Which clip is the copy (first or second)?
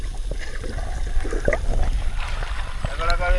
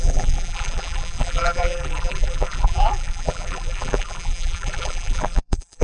second